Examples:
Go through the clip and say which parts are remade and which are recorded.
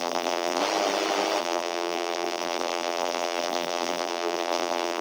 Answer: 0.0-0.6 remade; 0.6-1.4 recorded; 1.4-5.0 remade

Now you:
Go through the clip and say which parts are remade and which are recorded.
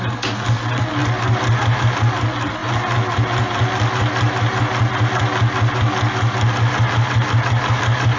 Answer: 0.0-8.2 recorded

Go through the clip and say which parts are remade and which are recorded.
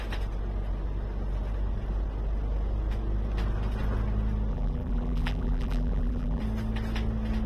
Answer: 0.0-4.5 recorded; 4.5-6.4 remade; 6.4-7.5 recorded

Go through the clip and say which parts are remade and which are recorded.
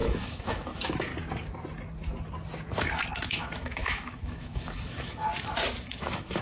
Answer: 0.0-1.1 remade; 1.1-3.1 recorded; 3.1-5.2 remade; 5.2-5.8 recorded; 5.8-6.4 remade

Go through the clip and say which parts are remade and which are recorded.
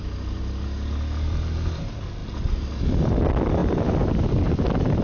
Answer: 0.0-5.0 recorded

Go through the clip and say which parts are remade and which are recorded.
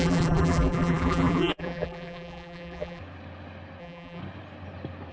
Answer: 0.0-3.0 remade; 3.0-3.8 recorded; 3.8-4.2 remade; 4.2-5.1 recorded